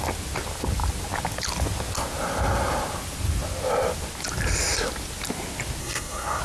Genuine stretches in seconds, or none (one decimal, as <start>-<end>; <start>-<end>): 0.0-5.8